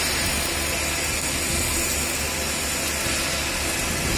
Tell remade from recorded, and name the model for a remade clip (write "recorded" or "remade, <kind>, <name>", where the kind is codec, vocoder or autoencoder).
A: recorded